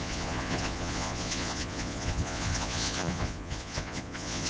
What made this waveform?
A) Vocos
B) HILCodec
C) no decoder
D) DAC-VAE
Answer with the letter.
A